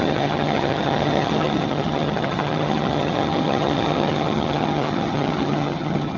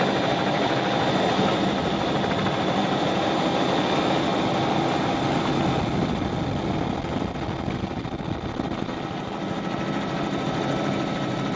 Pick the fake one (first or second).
first